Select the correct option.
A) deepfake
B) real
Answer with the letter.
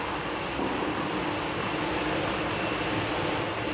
B